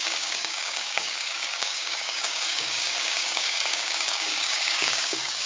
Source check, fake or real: fake